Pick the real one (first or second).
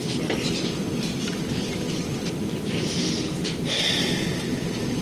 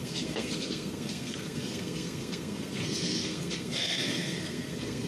first